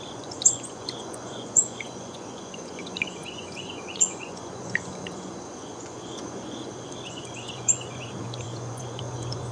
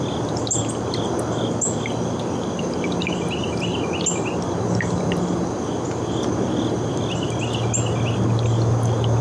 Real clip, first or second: second